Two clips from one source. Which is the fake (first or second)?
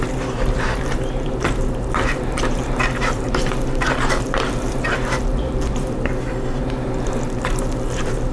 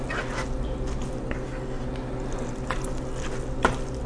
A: first